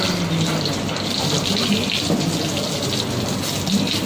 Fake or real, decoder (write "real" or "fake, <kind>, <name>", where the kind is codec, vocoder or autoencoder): real